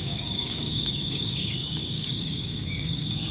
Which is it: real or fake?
fake